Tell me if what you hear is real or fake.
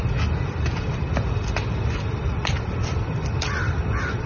real